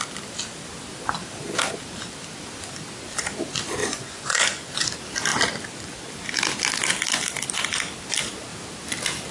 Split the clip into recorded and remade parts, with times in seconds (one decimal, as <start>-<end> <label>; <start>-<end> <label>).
0.0-3.8 recorded; 3.8-4.8 remade; 4.8-9.3 recorded